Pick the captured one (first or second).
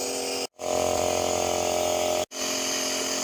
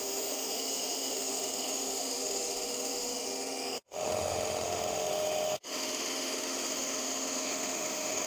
first